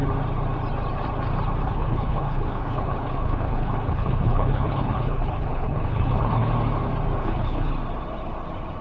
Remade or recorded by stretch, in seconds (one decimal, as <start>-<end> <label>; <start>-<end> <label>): 0.0-1.6 recorded; 1.6-6.5 remade; 6.5-7.2 recorded; 7.2-7.7 remade; 7.7-8.8 recorded